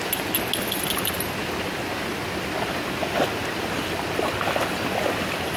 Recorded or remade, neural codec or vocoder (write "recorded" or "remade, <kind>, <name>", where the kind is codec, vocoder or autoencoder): recorded